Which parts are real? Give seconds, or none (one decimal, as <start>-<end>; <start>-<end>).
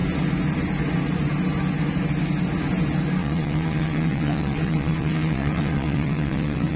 0.0-3.2